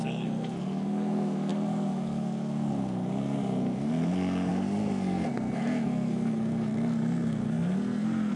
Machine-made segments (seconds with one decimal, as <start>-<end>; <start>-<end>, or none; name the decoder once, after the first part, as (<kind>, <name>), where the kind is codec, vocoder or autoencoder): 0.0-8.4 (codec, SNAC)

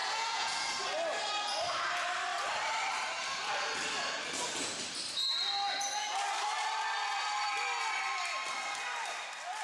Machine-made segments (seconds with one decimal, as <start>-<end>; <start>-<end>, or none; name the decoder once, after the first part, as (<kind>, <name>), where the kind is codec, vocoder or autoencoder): 0.0-0.7 (vocoder, Vocos)